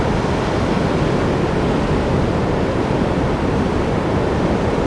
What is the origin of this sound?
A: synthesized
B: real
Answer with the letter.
B